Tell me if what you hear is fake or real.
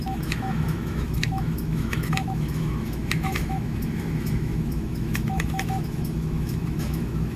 fake